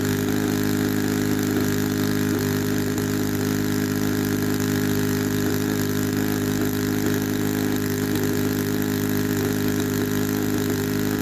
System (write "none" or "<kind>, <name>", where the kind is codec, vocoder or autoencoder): none